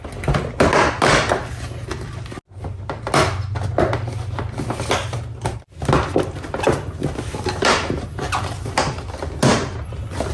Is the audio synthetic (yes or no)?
no